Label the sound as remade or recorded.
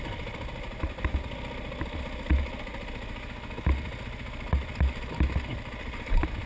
recorded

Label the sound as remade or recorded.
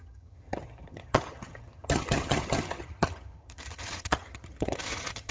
remade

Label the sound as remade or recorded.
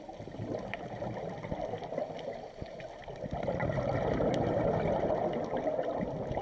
recorded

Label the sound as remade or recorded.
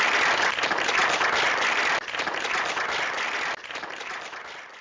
recorded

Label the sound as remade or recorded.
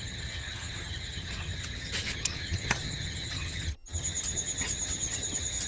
remade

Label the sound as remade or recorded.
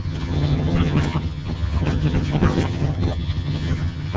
remade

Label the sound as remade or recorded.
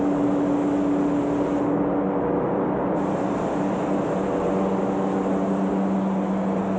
recorded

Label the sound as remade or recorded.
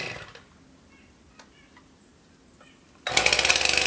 recorded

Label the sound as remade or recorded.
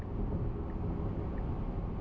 recorded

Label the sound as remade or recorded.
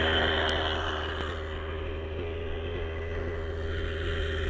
recorded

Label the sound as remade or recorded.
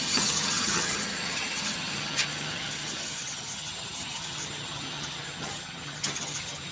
remade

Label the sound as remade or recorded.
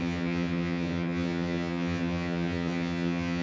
remade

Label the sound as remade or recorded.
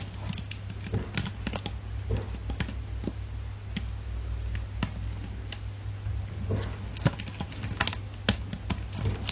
recorded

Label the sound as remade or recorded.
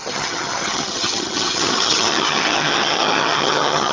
remade